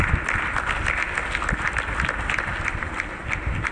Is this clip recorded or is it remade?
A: recorded